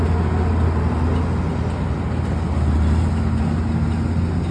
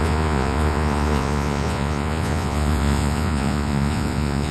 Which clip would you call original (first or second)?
first